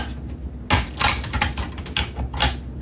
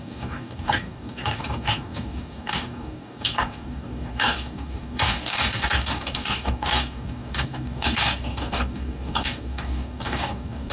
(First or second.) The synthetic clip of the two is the second